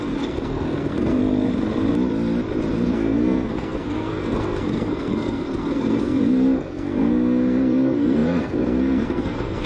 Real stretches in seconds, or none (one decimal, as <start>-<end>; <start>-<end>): 1.2-2.7